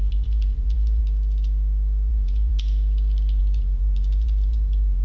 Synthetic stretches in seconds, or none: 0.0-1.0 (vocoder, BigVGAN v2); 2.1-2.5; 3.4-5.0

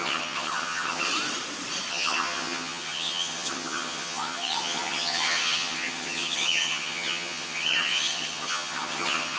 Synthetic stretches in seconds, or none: 0.0-1.1 (vocoder, HiFi-GAN); 1.9-9.4

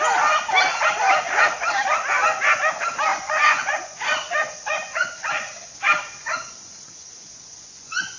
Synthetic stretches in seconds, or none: 3.1-8.2 (vocoder, Vocos)

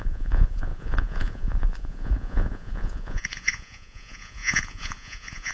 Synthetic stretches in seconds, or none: 0.0-5.5 (vocoder, Vocos)

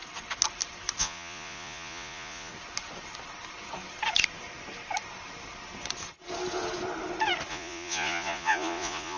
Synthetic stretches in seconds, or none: 1.0-2.5 (vocoder, Vocos); 7.5-9.2

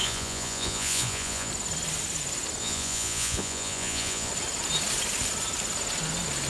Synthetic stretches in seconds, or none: 0.0-1.5 (vocoder, Vocos); 2.6-4.3

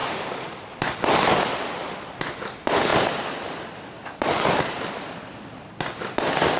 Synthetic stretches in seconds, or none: 0.0-0.8 (vocoder, BigVGAN v2); 2.9-5.8

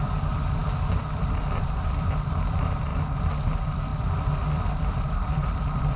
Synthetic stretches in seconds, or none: 0.0-2.9 (vocoder, BigVGAN v2); 3.5-3.9; 5.0-6.0